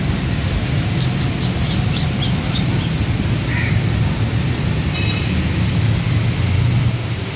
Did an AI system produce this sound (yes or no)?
no